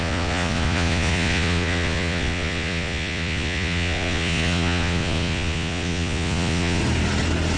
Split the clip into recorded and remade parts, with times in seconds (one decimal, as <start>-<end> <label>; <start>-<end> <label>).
0.0-6.8 remade; 6.8-7.6 recorded